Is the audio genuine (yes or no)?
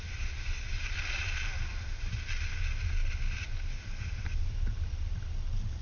yes